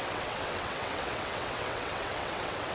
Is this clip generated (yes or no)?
yes